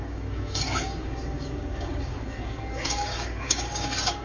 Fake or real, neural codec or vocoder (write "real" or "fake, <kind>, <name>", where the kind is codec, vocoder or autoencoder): fake, codec, DAC